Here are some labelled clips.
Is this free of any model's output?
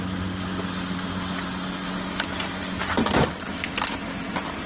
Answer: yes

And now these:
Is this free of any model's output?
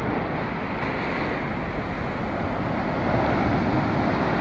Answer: yes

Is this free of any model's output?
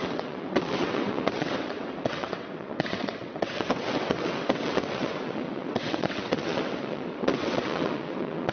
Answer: no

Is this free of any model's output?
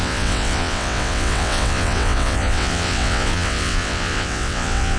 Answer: no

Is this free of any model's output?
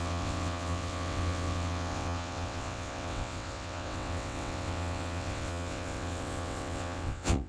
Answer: no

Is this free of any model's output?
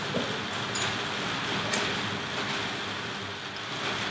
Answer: yes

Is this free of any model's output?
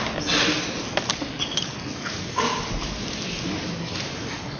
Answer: yes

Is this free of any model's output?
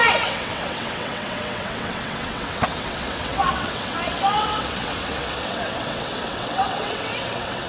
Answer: no